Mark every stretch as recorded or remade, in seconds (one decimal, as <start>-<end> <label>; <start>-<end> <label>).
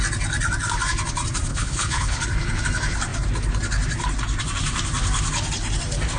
0.0-1.5 recorded; 1.5-2.2 remade; 2.2-6.2 recorded